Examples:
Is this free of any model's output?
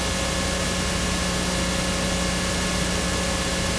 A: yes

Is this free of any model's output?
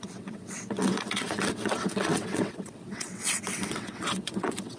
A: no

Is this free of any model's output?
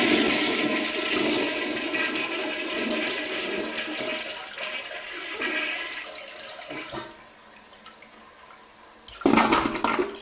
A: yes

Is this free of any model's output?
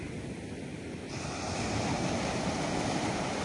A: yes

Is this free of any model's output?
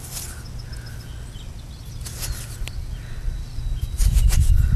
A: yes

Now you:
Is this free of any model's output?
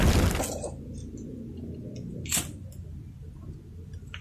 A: yes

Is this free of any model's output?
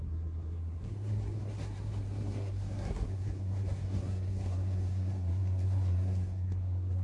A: no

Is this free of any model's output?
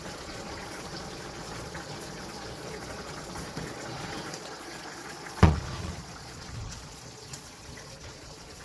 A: no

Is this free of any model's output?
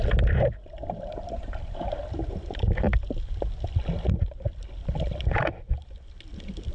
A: no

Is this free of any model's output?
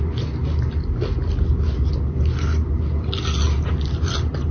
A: yes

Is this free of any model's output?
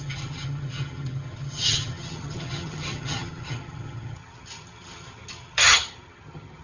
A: no